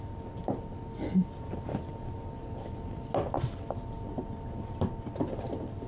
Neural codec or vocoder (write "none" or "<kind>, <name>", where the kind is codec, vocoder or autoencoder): none